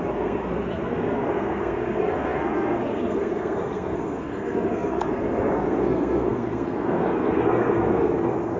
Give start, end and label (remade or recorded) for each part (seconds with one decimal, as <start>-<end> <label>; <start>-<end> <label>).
0.0-8.6 remade